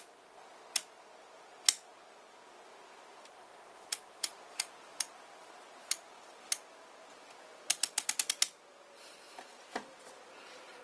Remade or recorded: recorded